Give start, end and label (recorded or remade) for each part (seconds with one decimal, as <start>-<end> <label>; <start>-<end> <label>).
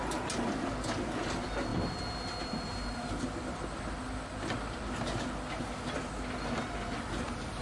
0.0-7.6 recorded